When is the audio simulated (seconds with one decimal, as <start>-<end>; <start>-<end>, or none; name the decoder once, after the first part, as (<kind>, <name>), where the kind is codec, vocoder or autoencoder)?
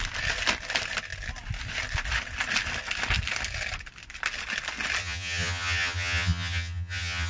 5.0-7.3 (vocoder, HiFi-GAN)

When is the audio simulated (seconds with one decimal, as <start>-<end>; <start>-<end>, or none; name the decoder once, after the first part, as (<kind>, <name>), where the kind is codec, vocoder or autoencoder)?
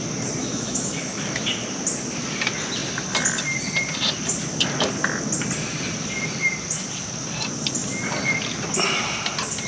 0.4-1.4 (autoencoder, DAC-VAE)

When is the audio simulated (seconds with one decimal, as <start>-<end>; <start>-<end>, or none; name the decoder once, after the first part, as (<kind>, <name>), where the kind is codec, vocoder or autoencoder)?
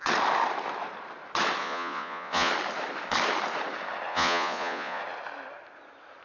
1.6-2.5 (vocoder, Vocos); 4.1-5.0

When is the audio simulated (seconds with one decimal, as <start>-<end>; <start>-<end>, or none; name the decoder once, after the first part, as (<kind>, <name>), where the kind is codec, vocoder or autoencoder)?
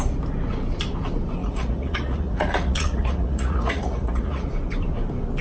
1.4-4.5 (vocoder, Vocos)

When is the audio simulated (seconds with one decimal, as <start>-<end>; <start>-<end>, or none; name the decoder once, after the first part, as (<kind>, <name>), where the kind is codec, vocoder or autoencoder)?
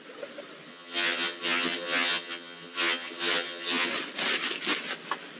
0.7-3.9 (vocoder, HiFi-GAN)